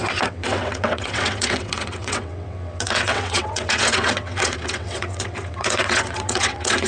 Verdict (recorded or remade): remade